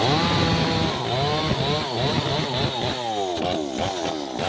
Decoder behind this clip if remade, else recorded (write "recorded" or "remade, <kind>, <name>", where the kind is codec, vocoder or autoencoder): recorded